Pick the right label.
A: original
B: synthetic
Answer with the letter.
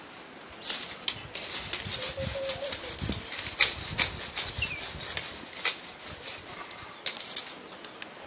A